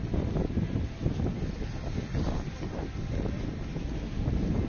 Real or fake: real